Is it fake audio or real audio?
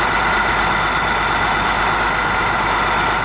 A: real